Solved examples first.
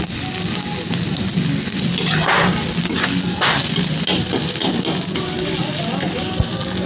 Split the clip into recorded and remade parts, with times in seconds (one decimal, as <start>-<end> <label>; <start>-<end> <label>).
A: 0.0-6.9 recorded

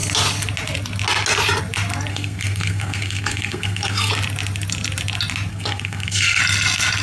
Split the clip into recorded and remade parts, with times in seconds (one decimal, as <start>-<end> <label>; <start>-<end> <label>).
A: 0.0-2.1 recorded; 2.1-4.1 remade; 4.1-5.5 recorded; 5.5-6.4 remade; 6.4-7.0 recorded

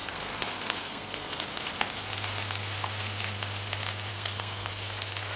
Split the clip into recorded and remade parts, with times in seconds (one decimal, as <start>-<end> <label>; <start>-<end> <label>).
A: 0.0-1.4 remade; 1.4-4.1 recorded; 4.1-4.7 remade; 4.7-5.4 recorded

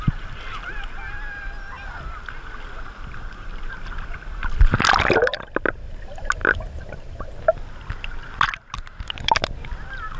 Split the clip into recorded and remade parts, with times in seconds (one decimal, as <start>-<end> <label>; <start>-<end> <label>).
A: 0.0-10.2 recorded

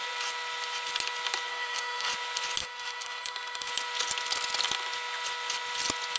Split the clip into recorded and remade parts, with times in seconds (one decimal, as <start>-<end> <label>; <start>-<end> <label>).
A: 0.0-1.5 recorded; 1.5-2.1 remade; 2.1-2.6 recorded; 2.6-3.7 remade; 3.7-6.2 recorded

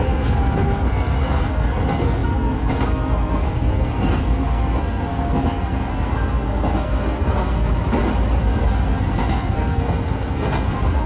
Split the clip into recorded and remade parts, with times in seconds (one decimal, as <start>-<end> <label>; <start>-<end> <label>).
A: 0.0-7.7 remade; 7.7-8.4 recorded; 8.4-11.1 remade

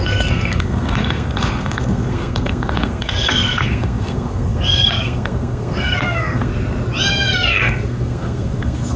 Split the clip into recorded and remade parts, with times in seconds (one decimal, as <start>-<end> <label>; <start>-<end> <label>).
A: 0.0-6.5 remade; 6.5-7.1 recorded; 7.1-9.0 remade